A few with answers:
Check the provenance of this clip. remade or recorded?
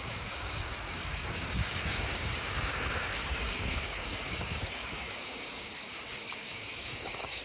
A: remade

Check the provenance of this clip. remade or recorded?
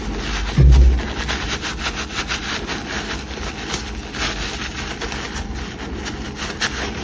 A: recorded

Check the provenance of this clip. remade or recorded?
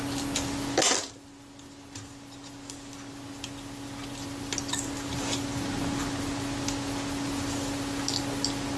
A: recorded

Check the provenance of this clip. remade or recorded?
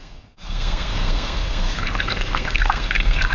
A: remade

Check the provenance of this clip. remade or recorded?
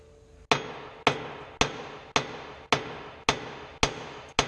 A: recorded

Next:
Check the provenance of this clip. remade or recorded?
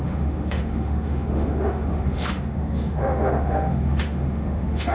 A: remade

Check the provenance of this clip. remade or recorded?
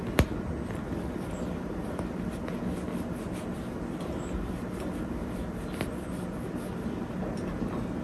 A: recorded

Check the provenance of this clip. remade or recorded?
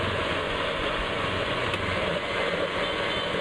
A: remade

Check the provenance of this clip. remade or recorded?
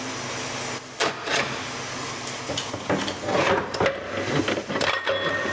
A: recorded